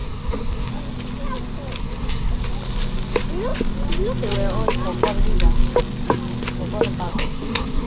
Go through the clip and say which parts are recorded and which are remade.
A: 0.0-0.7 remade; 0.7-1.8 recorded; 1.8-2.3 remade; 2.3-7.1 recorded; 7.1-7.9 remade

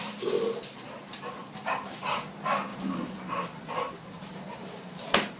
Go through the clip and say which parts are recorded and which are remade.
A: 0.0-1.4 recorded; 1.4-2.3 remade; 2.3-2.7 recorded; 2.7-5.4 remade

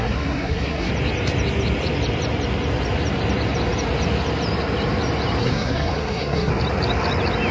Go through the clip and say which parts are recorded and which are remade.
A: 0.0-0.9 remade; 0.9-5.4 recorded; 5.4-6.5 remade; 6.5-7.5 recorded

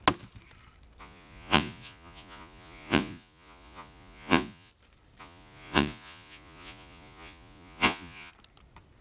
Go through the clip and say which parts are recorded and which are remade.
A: 0.0-1.0 recorded; 1.0-4.7 remade; 4.7-5.2 recorded; 5.2-8.3 remade; 8.3-9.0 recorded

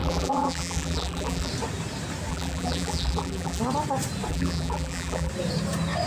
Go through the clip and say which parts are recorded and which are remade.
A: 0.0-1.5 remade; 1.5-2.3 recorded; 2.3-3.6 remade; 3.6-4.3 recorded; 4.3-5.3 remade; 5.3-6.1 recorded

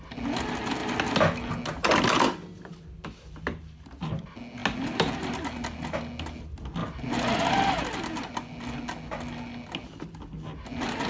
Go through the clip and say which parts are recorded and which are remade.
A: 0.0-11.1 recorded

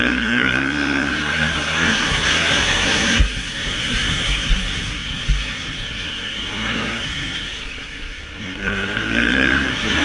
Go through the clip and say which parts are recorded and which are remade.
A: 0.0-10.0 remade